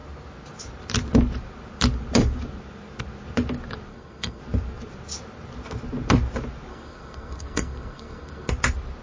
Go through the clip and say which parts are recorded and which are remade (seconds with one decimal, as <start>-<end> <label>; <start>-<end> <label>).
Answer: 0.0-3.9 recorded; 3.9-4.4 remade; 4.4-6.7 recorded; 6.7-8.5 remade; 8.5-9.0 recorded

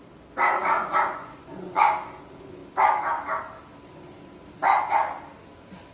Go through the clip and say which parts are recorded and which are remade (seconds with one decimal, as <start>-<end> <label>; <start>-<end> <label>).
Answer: 0.0-0.6 recorded; 0.6-1.8 remade; 1.8-5.9 recorded